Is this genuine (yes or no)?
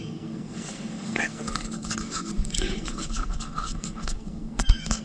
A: no